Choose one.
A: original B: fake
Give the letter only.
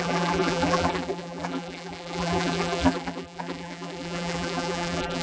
B